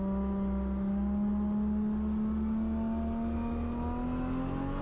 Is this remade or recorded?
recorded